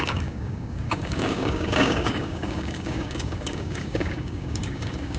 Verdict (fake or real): fake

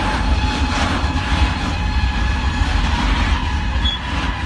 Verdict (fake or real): real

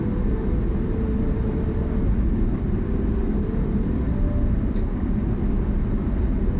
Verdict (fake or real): real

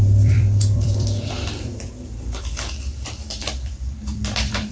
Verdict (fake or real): fake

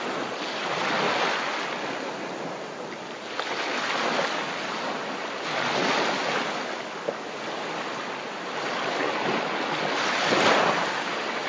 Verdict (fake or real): real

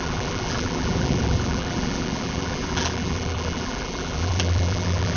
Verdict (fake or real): fake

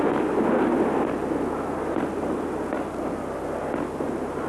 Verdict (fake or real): real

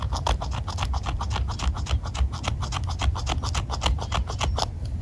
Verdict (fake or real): real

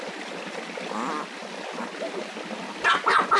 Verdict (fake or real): real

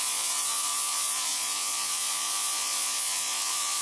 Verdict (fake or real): fake